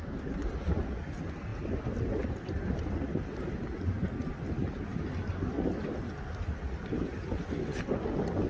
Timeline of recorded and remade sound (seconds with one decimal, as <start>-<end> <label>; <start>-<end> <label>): 0.0-8.5 recorded